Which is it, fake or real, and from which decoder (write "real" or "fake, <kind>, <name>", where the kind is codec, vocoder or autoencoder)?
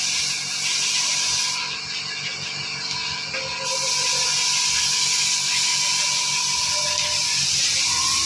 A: real